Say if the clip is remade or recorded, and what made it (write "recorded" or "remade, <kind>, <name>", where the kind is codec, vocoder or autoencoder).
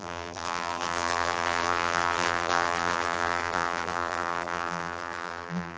remade, vocoder, BigVGAN v2